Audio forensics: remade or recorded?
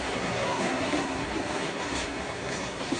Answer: remade